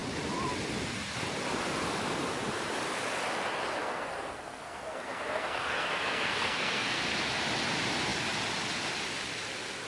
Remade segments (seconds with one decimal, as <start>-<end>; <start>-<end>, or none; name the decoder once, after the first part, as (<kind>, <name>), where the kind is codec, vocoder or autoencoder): 3.8-7.0 (codec, SNAC)